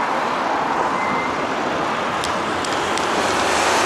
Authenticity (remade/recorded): recorded